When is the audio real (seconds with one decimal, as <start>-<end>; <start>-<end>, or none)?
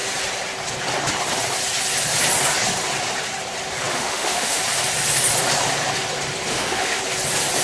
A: 0.0-3.9; 4.6-6.5; 7.0-7.6